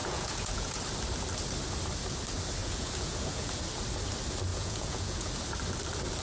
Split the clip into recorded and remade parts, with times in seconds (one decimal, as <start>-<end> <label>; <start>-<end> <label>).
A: 0.0-0.8 remade; 0.8-2.6 recorded; 2.6-3.5 remade; 3.5-4.5 recorded; 4.5-5.3 remade; 5.3-6.2 recorded